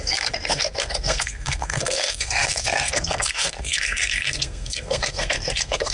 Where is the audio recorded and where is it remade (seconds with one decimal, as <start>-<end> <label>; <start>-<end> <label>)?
0.0-5.9 remade

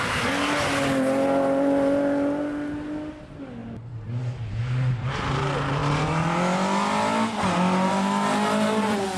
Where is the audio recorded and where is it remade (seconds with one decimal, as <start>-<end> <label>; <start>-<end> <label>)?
0.0-9.2 recorded

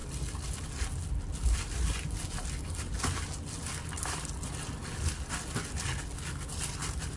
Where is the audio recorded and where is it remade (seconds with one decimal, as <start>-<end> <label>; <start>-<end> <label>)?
0.0-7.2 recorded

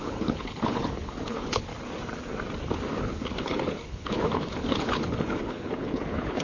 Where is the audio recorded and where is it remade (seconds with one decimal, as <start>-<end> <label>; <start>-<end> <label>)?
0.0-1.7 remade; 1.7-3.0 recorded; 3.0-6.4 remade

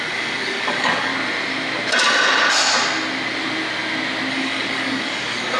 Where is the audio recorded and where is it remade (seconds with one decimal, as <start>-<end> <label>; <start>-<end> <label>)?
0.0-1.1 remade; 1.1-4.3 recorded; 4.3-5.6 remade